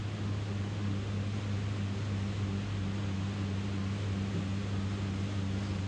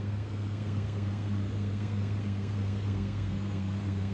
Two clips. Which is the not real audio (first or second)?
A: second